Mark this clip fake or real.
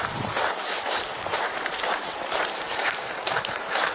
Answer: fake